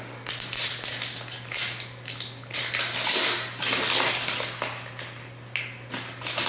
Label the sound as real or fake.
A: real